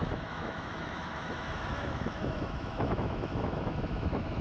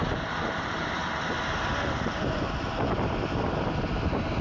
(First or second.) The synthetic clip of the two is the first